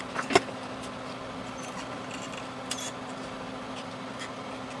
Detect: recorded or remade recorded